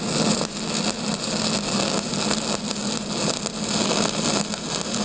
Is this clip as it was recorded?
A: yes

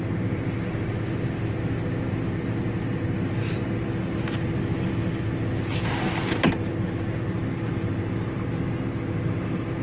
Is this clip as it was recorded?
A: yes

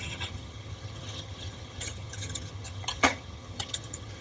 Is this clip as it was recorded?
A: no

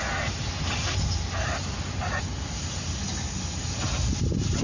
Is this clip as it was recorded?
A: yes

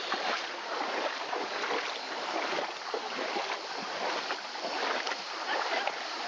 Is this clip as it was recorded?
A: yes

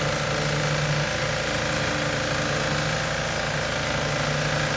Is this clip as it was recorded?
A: yes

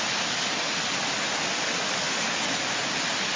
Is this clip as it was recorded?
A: yes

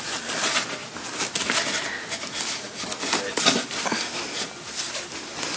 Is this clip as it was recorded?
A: yes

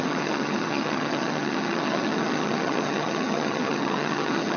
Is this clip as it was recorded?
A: no